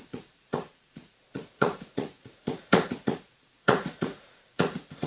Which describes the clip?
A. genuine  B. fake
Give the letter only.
B